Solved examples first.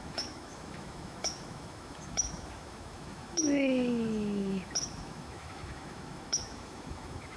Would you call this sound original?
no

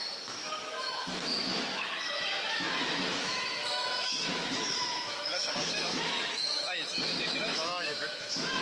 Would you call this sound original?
no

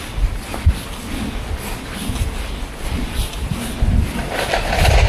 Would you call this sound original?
yes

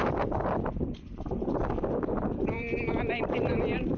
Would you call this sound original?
no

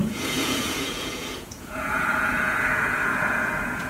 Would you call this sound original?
no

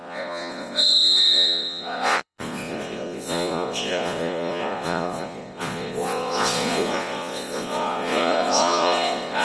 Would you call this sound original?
no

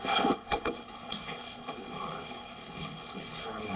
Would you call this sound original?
no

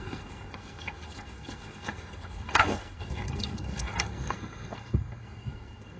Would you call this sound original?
no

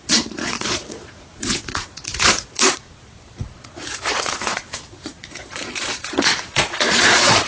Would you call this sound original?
no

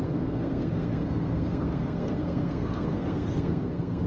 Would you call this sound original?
no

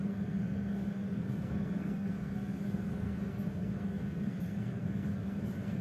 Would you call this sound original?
no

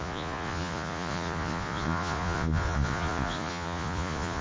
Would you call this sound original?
no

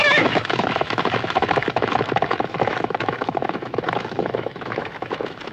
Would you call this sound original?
no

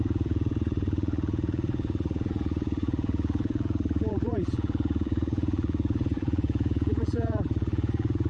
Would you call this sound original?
no